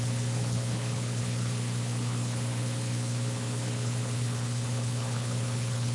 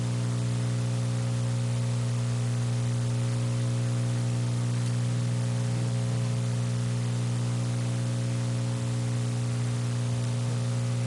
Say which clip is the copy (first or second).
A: first